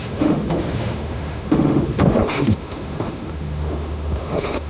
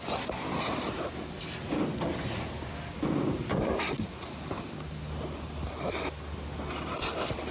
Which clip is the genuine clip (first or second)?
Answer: second